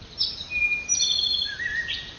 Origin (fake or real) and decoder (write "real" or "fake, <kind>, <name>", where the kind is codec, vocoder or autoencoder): real